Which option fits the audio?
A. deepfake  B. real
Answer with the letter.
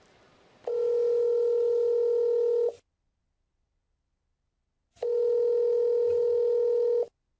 B